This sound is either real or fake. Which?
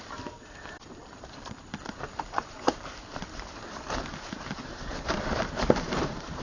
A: fake